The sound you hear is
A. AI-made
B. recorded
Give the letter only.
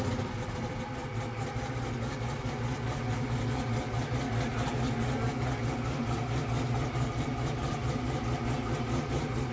B